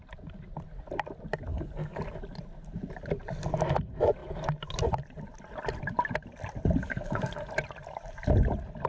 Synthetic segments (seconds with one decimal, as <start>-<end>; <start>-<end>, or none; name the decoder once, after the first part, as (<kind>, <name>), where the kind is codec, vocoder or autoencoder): 1.5-2.0 (codec, DAC); 6.8-7.5